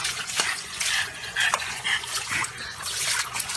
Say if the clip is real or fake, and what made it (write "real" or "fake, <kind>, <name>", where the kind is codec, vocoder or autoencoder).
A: fake, vocoder, Vocos